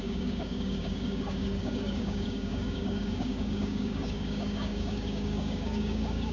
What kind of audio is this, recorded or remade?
remade